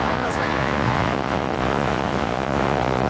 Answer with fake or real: fake